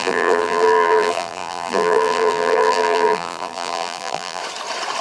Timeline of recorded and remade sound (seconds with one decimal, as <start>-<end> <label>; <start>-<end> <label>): 0.0-4.4 remade; 4.4-5.0 recorded